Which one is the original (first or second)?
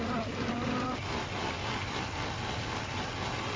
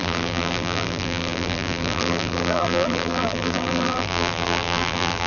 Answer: first